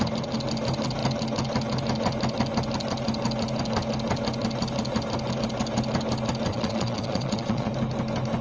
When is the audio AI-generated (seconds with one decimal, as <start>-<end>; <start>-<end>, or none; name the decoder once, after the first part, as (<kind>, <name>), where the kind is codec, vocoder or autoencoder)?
6.5-7.7 (vocoder, Vocos)